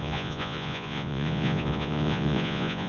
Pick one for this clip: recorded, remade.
remade